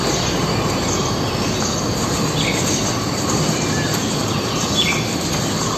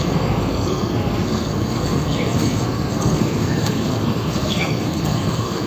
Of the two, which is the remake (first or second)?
second